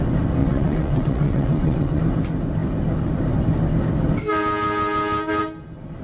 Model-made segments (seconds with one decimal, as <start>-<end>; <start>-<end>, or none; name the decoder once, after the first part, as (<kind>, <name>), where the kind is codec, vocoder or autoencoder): 0.4-2.0 (vocoder, WaveNeXt)